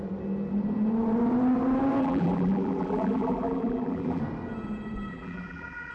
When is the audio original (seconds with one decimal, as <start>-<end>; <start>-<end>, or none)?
0.0-2.0; 4.2-5.1